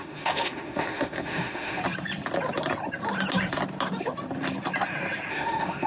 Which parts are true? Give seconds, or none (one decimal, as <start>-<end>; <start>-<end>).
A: 1.8-5.3